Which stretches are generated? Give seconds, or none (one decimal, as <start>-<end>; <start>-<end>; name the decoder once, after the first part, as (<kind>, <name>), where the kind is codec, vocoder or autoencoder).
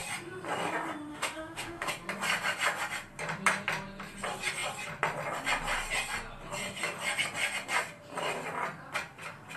1.1-1.9 (autoencoder, DAC-VAE)